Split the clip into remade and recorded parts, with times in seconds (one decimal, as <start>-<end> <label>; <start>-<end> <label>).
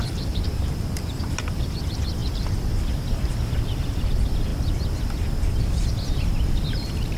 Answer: 0.0-7.2 remade